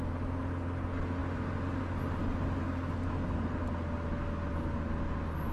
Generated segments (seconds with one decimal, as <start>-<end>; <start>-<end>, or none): none